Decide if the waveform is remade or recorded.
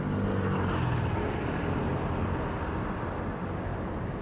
recorded